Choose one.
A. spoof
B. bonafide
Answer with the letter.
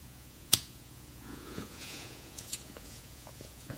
A